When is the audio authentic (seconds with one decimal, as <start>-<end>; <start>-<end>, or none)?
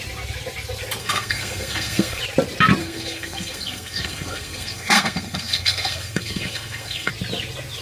0.0-1.0; 2.2-2.8; 7.1-7.8